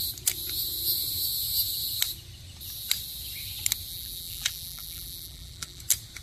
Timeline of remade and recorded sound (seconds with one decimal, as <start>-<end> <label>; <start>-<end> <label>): 0.0-3.9 recorded; 3.9-5.8 remade; 5.8-6.2 recorded